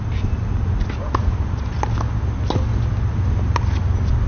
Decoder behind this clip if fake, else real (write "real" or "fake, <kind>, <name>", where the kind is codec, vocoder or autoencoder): real